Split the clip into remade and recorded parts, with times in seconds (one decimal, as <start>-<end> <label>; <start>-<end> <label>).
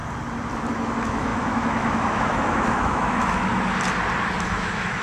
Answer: 0.0-0.7 recorded; 0.7-3.5 remade; 3.5-4.4 recorded; 4.4-5.0 remade